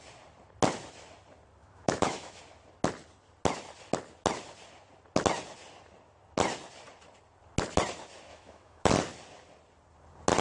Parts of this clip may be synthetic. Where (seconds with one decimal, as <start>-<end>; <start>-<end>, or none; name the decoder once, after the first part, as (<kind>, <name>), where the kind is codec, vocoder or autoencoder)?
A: 1.6-2.4 (autoencoder, DAC-VAE); 8.3-8.9